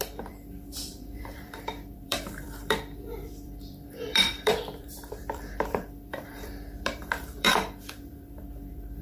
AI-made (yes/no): yes